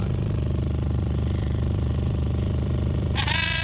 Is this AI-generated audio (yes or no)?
yes